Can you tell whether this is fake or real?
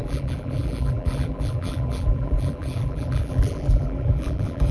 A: fake